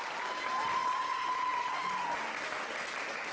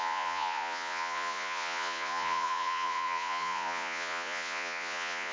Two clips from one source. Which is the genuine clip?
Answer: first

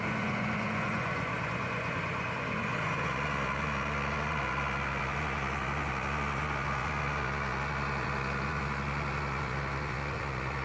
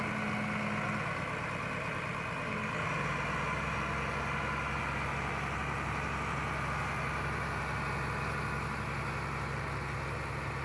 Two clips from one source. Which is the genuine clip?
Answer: second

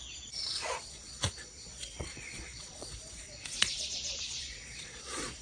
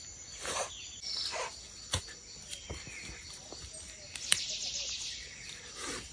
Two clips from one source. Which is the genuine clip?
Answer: second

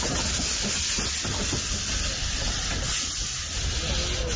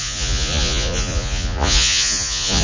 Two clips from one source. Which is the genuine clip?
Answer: first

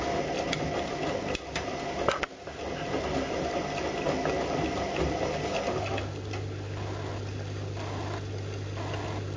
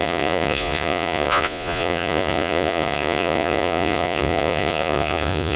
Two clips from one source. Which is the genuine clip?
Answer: first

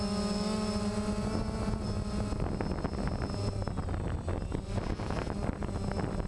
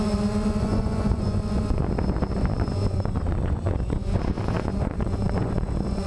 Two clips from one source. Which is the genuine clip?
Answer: first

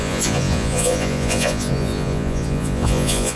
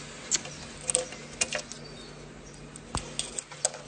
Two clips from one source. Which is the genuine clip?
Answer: second